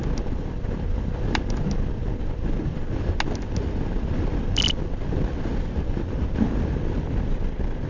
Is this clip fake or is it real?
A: real